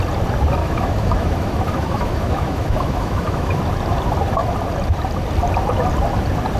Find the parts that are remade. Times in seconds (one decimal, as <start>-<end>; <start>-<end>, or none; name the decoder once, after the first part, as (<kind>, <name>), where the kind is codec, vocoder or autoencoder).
0.6-3.6 (autoencoder, DAC-VAE)